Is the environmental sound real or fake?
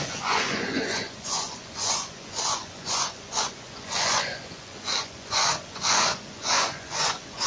fake